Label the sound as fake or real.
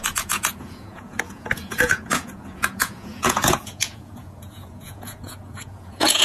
fake